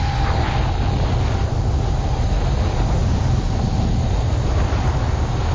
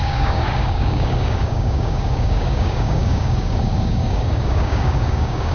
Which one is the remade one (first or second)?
second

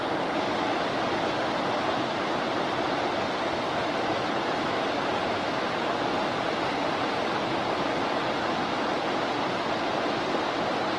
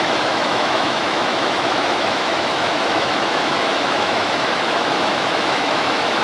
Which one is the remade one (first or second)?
second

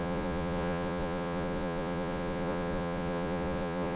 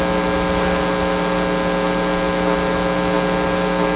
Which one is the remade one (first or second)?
first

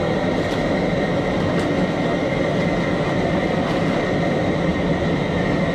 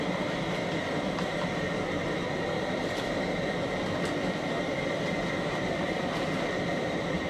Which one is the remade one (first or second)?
second